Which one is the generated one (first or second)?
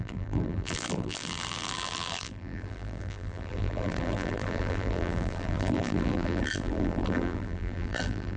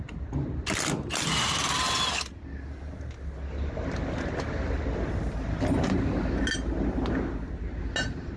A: first